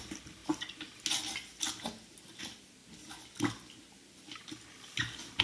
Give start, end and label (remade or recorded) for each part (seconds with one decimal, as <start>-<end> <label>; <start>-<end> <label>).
0.0-0.4 remade; 0.4-2.4 recorded; 2.4-2.8 remade; 2.8-5.4 recorded